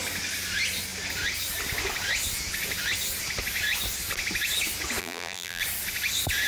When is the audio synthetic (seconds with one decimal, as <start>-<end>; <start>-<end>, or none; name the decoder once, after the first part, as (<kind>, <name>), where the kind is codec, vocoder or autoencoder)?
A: 5.0-5.6 (vocoder, BigVGAN v2)